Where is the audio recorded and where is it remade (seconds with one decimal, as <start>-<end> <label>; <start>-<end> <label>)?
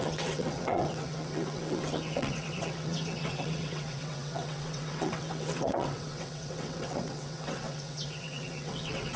0.0-9.2 remade